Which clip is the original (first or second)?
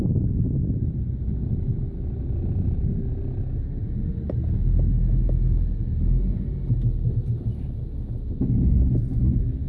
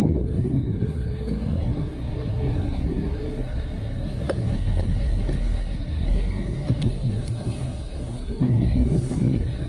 first